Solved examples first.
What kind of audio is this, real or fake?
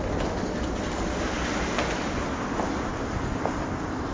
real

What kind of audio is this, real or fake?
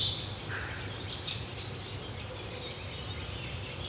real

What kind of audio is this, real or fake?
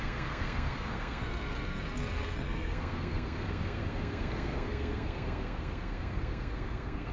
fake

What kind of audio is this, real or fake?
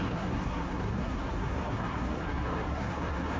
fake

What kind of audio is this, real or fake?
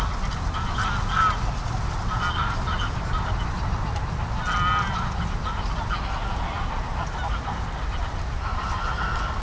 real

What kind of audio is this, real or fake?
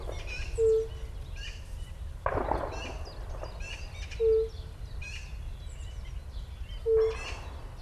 real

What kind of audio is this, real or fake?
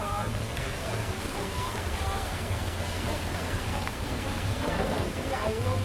fake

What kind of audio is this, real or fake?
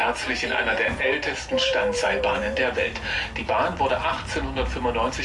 real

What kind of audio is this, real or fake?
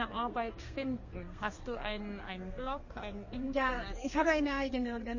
fake